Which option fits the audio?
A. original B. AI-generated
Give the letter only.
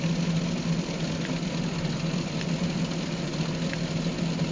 A